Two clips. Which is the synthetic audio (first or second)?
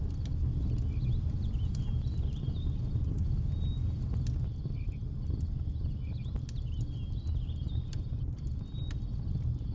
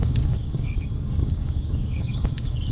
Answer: second